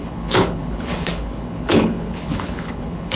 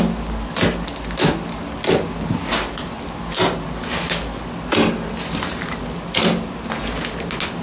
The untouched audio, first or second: second